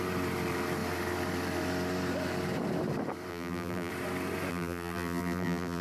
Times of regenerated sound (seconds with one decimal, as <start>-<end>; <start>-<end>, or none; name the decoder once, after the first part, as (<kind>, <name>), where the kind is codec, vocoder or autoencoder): 3.3-3.9 (vocoder, BigVGAN v2); 4.5-5.8